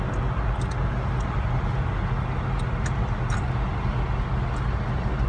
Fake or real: real